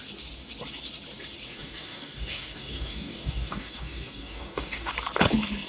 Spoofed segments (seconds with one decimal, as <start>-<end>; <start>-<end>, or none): 1.5-4.9